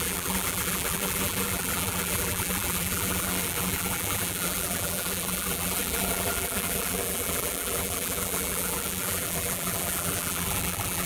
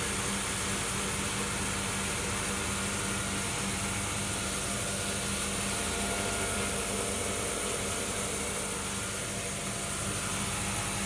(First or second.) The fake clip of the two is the first